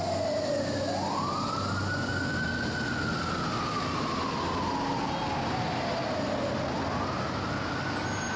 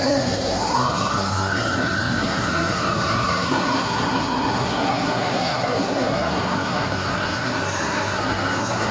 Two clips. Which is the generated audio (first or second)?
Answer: second